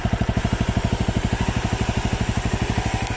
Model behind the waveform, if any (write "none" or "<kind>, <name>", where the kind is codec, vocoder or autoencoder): none